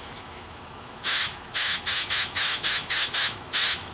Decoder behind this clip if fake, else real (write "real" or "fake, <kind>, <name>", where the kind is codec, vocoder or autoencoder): fake, autoencoder, DAC-VAE